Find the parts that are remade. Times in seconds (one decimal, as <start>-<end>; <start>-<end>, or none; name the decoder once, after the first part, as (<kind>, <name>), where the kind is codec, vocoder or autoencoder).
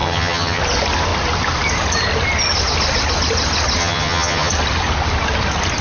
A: 0.0-0.6 (vocoder, HiFi-GAN); 3.8-4.5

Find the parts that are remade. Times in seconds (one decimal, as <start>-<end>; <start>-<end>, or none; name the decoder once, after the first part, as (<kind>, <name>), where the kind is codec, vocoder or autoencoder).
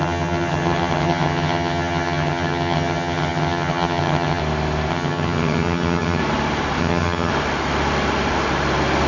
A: 0.0-4.4 (vocoder, HiFi-GAN); 4.9-6.2; 6.8-7.3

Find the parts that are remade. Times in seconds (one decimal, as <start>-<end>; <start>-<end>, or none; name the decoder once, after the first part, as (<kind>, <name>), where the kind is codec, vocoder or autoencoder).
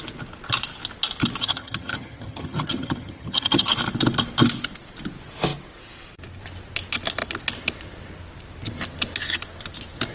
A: 1.4-3.7 (vocoder, HiFi-GAN)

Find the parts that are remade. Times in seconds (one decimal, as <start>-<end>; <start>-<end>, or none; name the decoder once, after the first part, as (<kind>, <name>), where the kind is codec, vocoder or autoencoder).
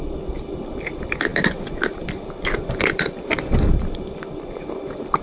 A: none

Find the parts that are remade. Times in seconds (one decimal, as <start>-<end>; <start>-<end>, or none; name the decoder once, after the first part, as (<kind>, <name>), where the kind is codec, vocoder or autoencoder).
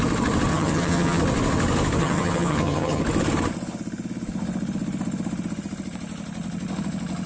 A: 0.5-1.2 (vocoder, HiFi-GAN); 2.0-3.0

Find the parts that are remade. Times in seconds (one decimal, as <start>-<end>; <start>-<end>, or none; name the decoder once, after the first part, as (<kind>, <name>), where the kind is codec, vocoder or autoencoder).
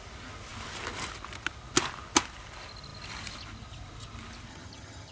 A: 4.5-5.1 (vocoder, HiFi-GAN)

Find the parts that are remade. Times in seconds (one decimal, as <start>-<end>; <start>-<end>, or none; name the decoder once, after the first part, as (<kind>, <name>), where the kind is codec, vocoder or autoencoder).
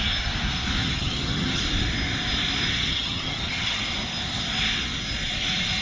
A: 0.8-1.6 (vocoder, HiFi-GAN); 2.7-3.8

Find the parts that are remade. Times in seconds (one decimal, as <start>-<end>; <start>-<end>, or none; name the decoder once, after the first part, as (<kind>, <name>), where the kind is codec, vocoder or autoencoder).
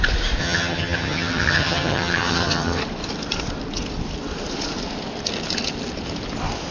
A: 0.4-2.8 (vocoder, HiFi-GAN)